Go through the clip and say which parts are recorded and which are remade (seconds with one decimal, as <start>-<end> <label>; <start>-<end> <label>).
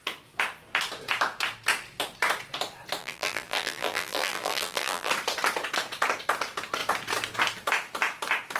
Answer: 0.0-3.0 recorded; 3.0-5.1 remade; 5.1-8.6 recorded